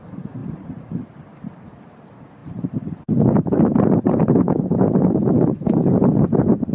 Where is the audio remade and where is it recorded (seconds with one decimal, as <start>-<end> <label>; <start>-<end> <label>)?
0.0-2.4 recorded; 2.4-6.7 remade